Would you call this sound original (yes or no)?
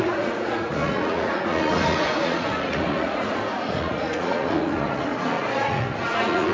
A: no